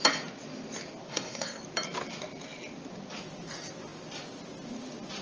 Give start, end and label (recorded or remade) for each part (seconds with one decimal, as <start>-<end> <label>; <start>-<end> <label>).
0.0-1.1 recorded; 1.1-1.6 remade; 1.6-5.2 recorded